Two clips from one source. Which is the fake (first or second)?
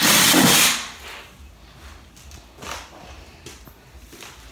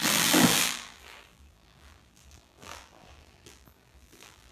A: second